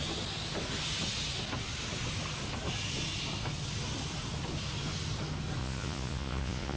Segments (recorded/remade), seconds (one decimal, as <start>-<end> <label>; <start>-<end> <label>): 0.0-5.6 recorded; 5.6-6.8 remade